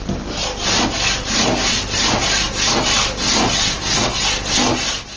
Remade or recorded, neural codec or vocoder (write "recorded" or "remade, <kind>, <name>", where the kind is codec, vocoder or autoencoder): recorded